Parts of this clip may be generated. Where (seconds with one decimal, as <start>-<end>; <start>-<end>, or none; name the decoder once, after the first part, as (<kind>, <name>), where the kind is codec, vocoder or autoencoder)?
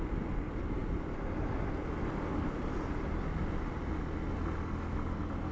none